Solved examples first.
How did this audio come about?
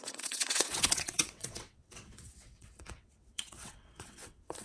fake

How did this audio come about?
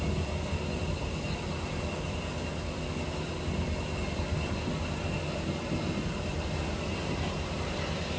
real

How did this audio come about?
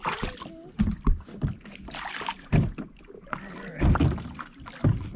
real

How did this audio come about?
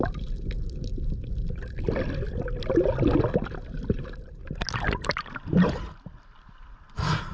real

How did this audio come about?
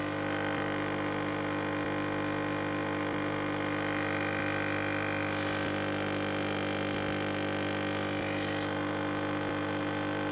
real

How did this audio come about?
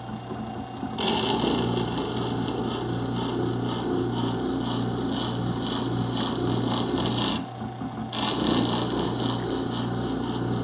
real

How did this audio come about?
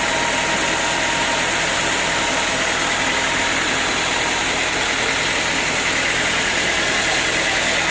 real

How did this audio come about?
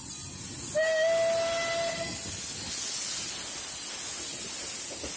real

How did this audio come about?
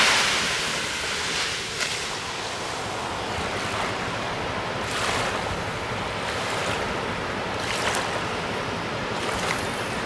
real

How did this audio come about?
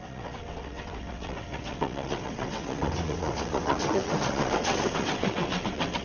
fake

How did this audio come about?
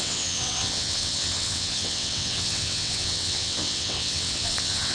fake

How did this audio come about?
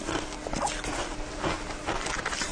real